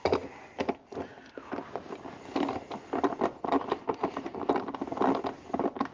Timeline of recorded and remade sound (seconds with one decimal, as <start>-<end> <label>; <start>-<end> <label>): 0.0-5.9 recorded